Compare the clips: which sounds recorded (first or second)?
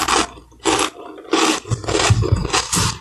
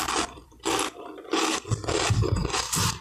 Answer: first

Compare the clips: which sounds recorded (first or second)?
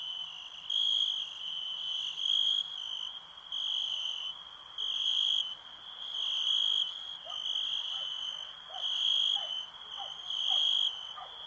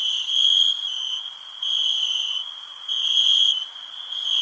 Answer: first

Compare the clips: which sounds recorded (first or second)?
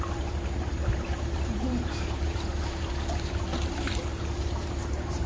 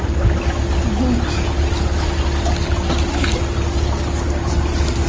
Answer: second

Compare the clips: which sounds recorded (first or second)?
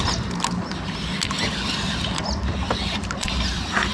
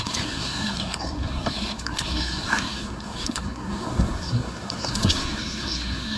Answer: first